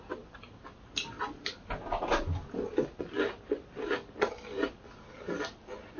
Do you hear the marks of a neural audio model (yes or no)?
no